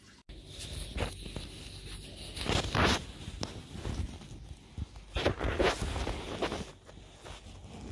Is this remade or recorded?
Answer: recorded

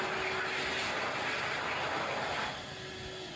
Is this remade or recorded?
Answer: recorded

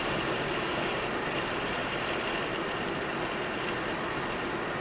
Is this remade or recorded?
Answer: recorded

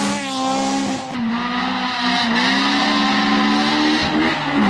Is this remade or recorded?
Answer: recorded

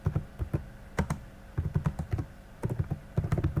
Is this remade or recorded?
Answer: recorded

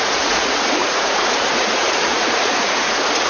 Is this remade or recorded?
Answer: remade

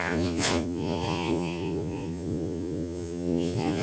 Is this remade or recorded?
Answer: remade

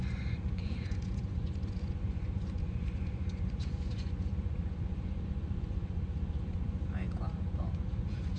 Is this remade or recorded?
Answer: remade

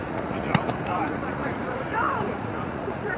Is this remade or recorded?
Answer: remade